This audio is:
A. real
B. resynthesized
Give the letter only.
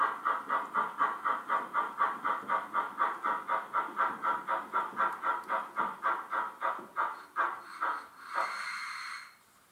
A